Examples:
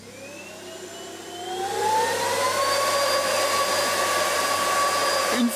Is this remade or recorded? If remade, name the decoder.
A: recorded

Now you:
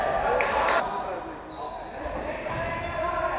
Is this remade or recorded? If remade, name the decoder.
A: recorded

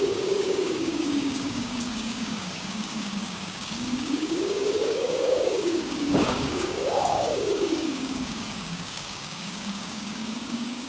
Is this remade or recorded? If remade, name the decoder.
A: remade, codec, DAC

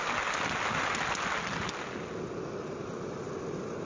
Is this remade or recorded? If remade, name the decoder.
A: recorded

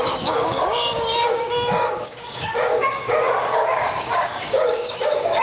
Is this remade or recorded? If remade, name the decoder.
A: remade, codec, DAC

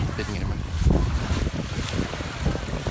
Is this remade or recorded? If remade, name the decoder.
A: recorded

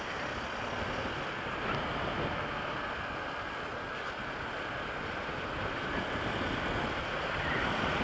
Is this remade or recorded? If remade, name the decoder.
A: recorded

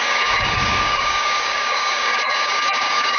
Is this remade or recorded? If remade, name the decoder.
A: remade, codec, DAC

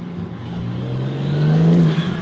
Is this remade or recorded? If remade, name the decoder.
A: remade, codec, DAC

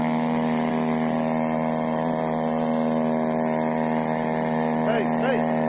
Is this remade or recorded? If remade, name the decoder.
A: recorded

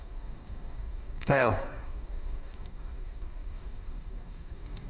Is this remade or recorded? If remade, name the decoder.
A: remade, codec, DAC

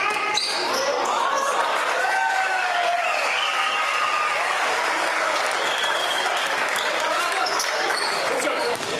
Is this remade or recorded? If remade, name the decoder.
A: remade, codec, DAC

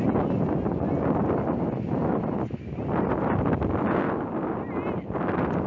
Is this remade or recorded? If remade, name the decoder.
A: recorded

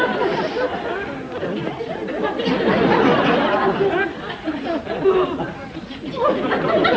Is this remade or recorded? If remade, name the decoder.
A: recorded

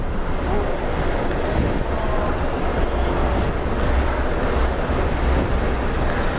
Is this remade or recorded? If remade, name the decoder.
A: recorded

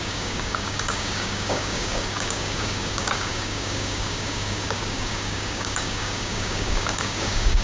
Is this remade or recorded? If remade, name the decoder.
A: remade, codec, DAC